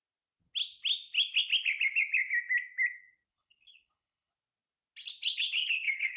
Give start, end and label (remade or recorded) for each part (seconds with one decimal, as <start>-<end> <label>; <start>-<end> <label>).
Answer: 0.0-3.3 recorded; 3.3-4.3 remade; 4.3-5.3 recorded; 5.3-6.2 remade